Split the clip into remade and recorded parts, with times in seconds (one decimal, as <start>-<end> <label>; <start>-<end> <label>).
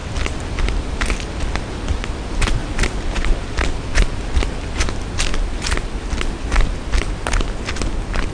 0.0-8.3 recorded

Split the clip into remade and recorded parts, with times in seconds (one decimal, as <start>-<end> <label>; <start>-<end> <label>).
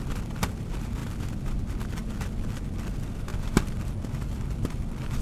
0.0-5.2 recorded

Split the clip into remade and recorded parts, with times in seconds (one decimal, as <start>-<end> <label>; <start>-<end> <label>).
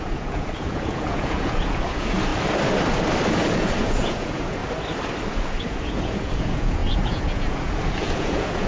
0.0-2.3 remade; 2.3-3.3 recorded; 3.3-4.6 remade; 4.6-5.3 recorded; 5.3-8.7 remade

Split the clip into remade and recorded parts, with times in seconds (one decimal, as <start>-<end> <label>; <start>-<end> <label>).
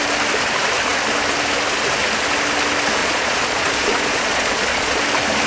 0.0-3.0 recorded; 3.0-5.0 remade; 5.0-5.5 recorded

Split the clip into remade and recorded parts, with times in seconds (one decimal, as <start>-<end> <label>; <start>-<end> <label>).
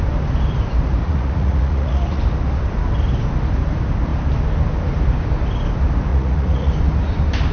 0.0-1.0 recorded; 1.0-2.2 remade; 2.2-6.1 recorded; 6.1-6.7 remade; 6.7-7.5 recorded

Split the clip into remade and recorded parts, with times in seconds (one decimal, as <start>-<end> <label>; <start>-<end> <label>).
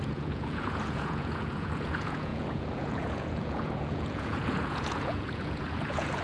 0.0-6.2 remade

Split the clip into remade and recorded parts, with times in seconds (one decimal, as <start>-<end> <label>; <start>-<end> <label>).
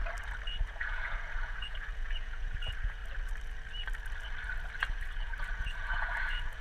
0.0-0.6 recorded; 0.6-3.0 remade; 3.0-4.8 recorded; 4.8-6.6 remade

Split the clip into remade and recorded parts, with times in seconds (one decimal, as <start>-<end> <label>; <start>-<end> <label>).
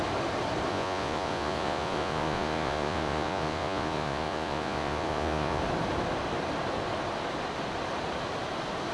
0.0-0.7 recorded; 0.7-5.6 remade; 5.6-8.9 recorded